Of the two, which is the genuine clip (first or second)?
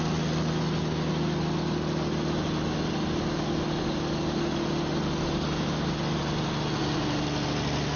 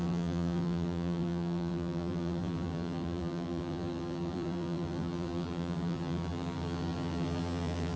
first